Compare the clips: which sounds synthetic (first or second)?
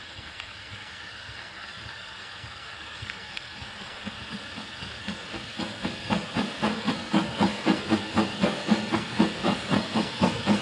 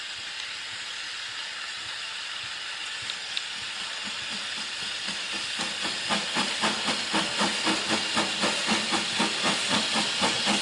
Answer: first